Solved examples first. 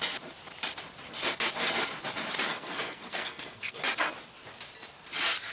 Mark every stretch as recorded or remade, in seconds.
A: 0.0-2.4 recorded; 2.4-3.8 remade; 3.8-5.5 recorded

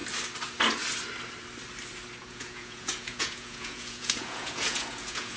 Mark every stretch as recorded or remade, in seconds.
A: 0.0-2.2 recorded; 2.2-5.4 remade

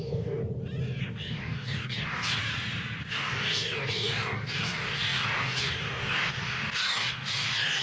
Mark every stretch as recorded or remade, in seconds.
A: 0.0-0.4 remade; 0.4-1.0 recorded; 1.0-2.4 remade; 2.4-3.0 recorded; 3.0-7.8 remade

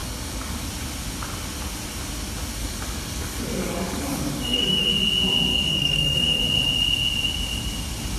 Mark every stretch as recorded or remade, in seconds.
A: 0.0-0.7 remade; 0.7-2.6 recorded; 2.6-4.9 remade; 4.9-5.5 recorded; 5.5-6.4 remade; 6.4-8.2 recorded

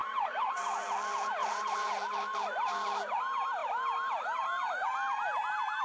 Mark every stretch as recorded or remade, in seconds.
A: 0.0-0.6 remade; 0.6-1.4 recorded; 1.4-2.0 remade; 2.0-5.8 recorded

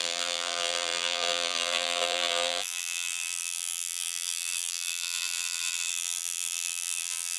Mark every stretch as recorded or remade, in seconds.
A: 0.0-7.4 remade

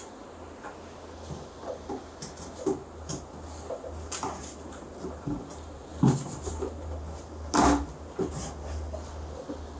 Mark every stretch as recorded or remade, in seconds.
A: 0.0-9.8 recorded